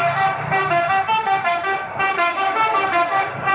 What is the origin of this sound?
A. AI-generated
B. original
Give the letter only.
A